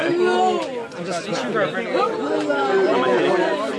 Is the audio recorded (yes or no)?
yes